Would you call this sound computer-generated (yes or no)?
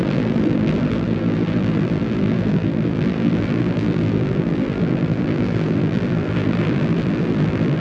yes